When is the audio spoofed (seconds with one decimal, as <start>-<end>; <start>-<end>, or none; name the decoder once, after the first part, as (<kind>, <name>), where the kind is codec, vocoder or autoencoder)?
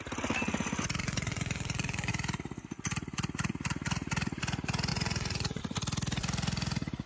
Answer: 1.0-2.1 (vocoder, Vocos); 4.9-5.6